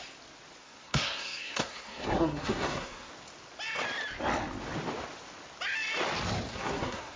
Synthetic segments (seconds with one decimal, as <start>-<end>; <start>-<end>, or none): 0.6-3.1; 6.5-7.2